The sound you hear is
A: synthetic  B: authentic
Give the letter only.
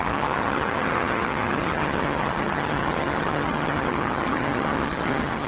A